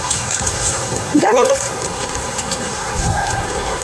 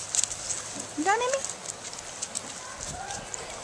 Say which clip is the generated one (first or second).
first